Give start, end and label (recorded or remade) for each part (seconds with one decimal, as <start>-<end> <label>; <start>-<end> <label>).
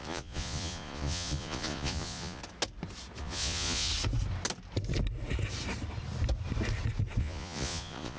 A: 0.0-2.4 remade; 2.4-3.2 recorded; 3.2-3.9 remade; 3.9-7.2 recorded; 7.2-8.2 remade